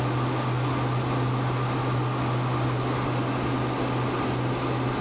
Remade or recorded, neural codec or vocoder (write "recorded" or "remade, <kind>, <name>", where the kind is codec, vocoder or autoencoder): recorded